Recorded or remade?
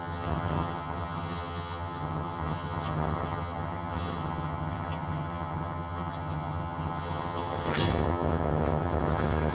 remade